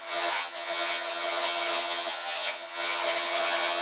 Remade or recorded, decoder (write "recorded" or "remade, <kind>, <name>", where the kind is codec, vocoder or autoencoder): remade, vocoder, HiFi-GAN